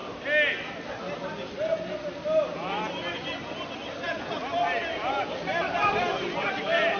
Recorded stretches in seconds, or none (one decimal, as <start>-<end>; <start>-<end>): 0.0-4.8; 6.1-7.0